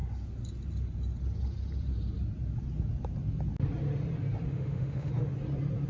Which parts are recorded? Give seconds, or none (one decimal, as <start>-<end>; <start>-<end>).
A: 0.0-4.5; 5.1-5.9